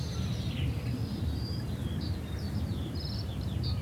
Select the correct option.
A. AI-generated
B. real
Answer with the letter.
A